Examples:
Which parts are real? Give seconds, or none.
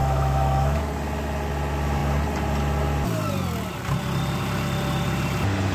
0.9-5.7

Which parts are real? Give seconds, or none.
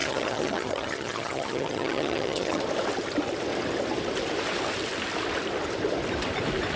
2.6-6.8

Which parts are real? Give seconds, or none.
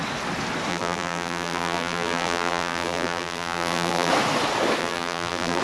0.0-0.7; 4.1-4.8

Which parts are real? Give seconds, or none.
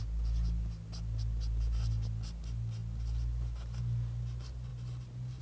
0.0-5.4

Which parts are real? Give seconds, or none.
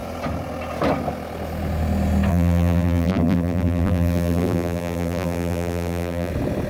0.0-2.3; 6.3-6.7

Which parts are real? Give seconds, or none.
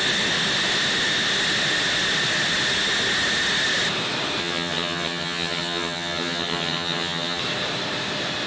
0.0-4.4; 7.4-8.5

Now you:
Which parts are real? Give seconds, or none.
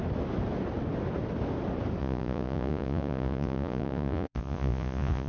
0.0-2.0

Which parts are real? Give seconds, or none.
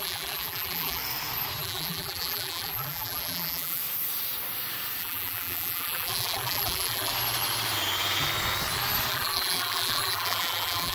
1.0-1.6; 3.8-5.0; 7.1-9.1